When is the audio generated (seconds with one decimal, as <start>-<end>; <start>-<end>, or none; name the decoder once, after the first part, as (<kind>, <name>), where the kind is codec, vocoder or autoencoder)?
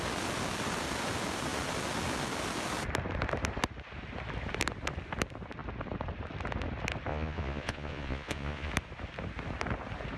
7.1-8.7 (vocoder, Vocos)